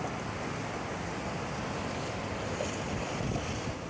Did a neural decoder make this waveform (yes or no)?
no